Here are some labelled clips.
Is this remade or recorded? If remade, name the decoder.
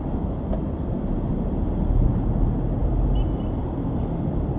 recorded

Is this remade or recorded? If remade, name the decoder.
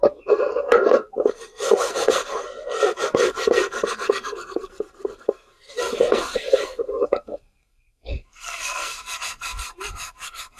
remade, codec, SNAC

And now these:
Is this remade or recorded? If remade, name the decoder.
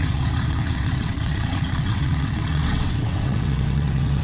remade, vocoder, WaveNeXt